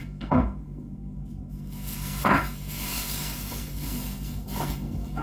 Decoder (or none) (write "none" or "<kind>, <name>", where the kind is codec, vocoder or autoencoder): codec, SNAC